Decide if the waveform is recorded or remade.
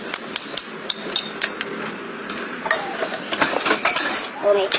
recorded